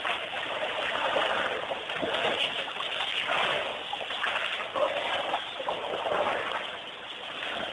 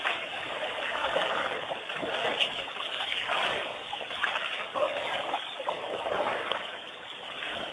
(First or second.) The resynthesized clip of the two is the second